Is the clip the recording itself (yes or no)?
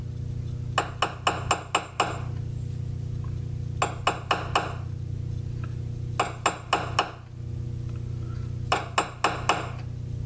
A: yes